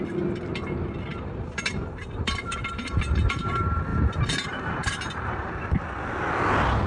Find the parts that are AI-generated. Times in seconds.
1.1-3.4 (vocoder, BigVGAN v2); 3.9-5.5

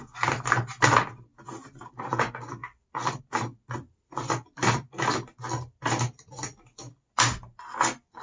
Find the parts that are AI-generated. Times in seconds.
2.6-3.2 (vocoder, BigVGAN v2)

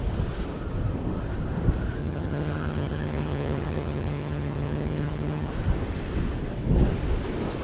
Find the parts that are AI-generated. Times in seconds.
2.0-5.5 (vocoder, HiFi-GAN)

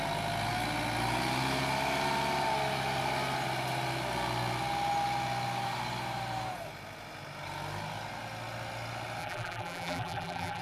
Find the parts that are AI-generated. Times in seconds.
9.2-10.6 (vocoder, BigVGAN v2)

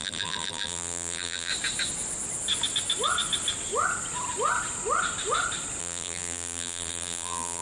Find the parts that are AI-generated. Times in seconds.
0.0-1.5 (vocoder, BigVGAN v2); 5.8-7.6

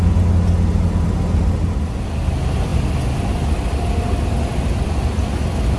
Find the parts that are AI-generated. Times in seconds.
none

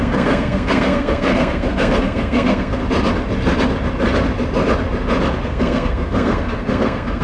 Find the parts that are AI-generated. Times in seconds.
0.0-2.8 (codec, SNAC); 5.4-7.2

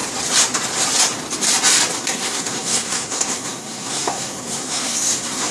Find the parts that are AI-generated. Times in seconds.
2.0-5.5 (codec, SNAC)